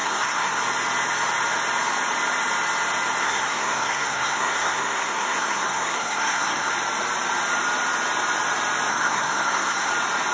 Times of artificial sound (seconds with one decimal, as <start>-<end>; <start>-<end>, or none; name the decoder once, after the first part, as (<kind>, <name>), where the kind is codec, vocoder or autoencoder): 0.0-0.6 (codec, SNAC); 3.2-6.7; 8.9-9.9